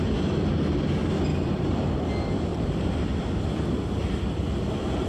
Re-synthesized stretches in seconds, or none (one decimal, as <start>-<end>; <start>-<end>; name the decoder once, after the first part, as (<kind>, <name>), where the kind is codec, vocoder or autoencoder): 1.3-2.1 (vocoder, BigVGAN v2); 2.5-3.2